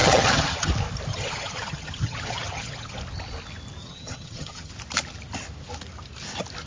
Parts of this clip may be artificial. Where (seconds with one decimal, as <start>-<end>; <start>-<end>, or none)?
0.0-0.7; 1.1-3.0; 3.8-4.7

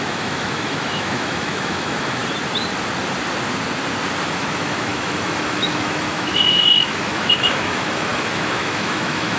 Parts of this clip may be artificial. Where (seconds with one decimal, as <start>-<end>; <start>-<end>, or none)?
0.0-2.2; 4.3-9.4